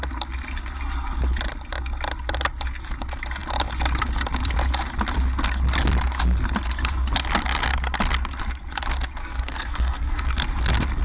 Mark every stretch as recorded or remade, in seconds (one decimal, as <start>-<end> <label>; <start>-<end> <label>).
0.0-9.2 recorded; 9.2-10.3 remade; 10.3-11.0 recorded